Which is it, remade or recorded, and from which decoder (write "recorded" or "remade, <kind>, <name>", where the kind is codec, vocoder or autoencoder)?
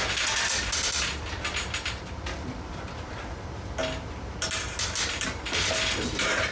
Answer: recorded